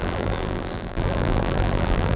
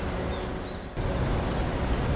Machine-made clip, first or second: first